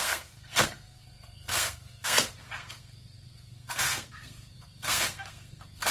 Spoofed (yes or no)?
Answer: yes